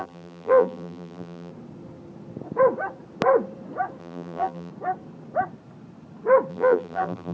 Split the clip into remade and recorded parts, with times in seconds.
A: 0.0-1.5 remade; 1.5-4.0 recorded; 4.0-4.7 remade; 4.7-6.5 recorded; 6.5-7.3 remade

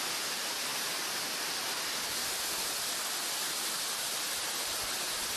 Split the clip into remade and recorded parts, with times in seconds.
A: 0.0-5.4 recorded

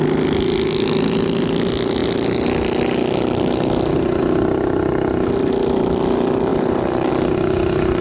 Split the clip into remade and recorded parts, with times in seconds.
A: 0.0-6.5 recorded; 6.5-7.1 remade; 7.1-8.0 recorded

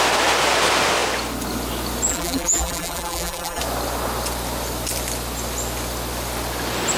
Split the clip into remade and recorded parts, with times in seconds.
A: 0.0-2.1 recorded; 2.1-3.6 remade; 3.6-7.0 recorded

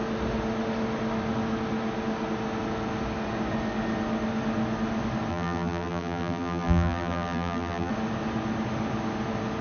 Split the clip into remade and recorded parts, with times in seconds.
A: 0.0-5.3 recorded; 5.3-7.9 remade; 7.9-9.6 recorded

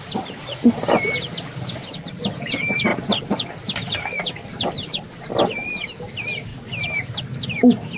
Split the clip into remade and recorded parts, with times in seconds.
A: 0.0-6.5 recorded; 6.5-7.2 remade; 7.2-8.0 recorded